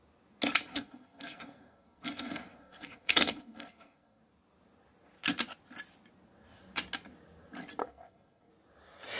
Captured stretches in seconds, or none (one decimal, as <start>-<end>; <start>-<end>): 0.0-0.7; 4.2-7.8; 8.5-9.2